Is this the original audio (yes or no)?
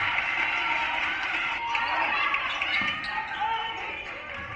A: yes